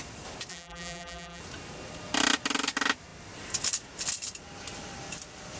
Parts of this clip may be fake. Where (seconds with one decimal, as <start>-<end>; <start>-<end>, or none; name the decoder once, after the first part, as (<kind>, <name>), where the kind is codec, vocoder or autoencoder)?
0.5-1.4 (vocoder, BigVGAN v2)